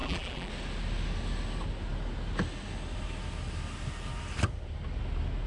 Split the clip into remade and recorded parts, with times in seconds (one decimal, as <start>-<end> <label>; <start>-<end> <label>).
0.0-0.5 remade; 0.5-5.5 recorded